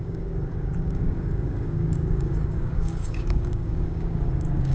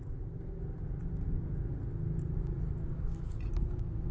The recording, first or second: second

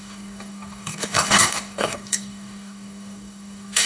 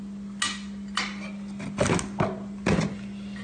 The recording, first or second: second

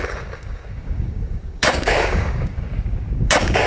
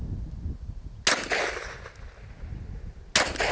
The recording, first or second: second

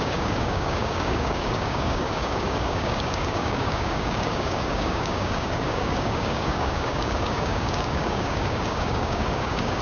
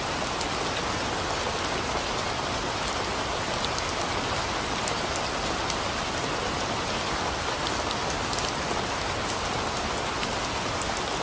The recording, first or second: second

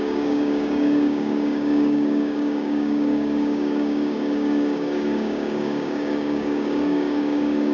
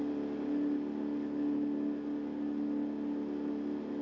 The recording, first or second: second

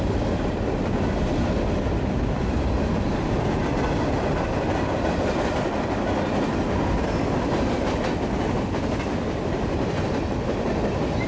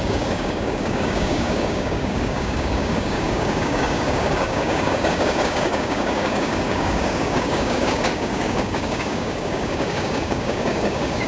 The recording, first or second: first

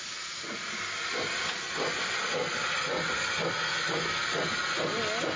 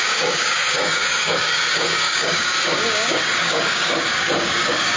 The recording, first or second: first